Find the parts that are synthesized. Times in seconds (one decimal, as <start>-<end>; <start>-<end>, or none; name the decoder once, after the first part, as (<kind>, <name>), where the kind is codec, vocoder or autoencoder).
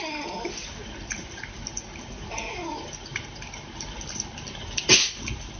none